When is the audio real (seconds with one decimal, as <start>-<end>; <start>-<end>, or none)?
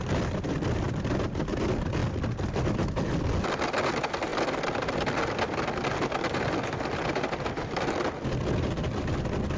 0.0-9.6